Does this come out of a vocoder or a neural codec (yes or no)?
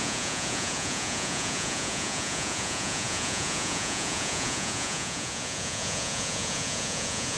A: yes